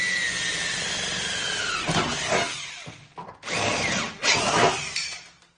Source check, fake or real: real